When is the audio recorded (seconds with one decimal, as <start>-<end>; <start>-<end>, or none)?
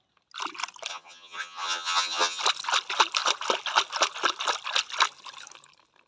0.0-0.9; 2.4-6.1